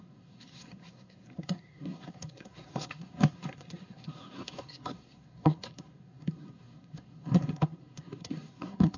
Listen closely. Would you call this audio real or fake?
fake